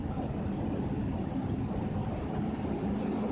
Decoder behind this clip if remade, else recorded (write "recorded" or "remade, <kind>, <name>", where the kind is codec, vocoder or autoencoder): recorded